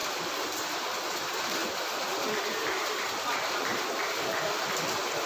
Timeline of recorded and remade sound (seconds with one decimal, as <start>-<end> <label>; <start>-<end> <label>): 0.0-5.3 recorded